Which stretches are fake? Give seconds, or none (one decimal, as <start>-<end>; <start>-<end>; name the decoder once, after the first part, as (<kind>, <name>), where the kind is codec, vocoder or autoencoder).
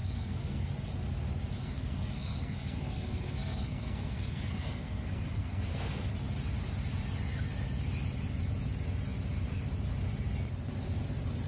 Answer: 0.0-0.7 (codec, SNAC); 1.6-6.1